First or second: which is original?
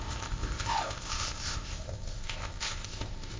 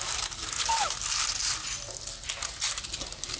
second